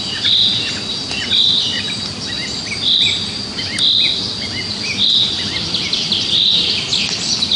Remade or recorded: recorded